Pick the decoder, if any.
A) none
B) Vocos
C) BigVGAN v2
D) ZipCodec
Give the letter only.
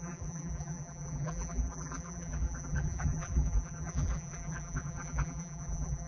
C